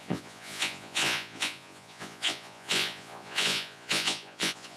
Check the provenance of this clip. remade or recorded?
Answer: remade